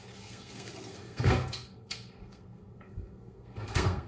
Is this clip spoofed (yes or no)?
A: yes